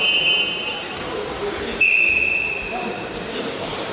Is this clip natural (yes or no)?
no